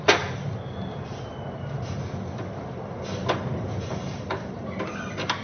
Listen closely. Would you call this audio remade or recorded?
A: recorded